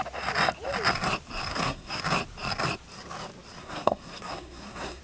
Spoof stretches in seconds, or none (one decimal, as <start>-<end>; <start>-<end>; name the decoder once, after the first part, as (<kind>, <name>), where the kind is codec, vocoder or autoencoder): 1.5-2.0 (codec, SNAC); 3.6-5.0